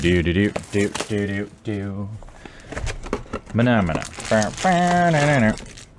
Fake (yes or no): no